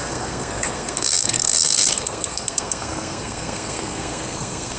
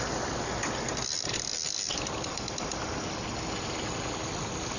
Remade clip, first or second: first